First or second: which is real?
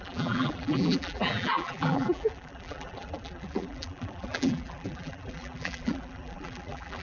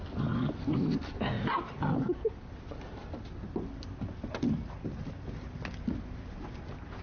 second